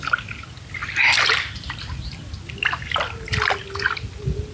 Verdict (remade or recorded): recorded